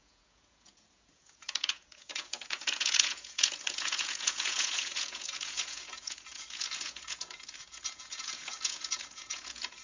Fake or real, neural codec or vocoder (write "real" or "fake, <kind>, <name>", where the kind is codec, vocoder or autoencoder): fake, vocoder, Vocos